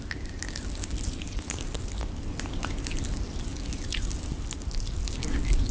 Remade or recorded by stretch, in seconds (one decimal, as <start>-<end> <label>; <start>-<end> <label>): 0.0-5.7 recorded